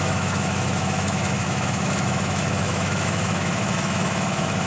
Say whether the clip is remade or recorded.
remade